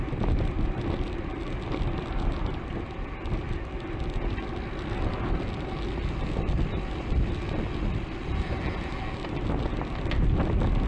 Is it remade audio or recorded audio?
recorded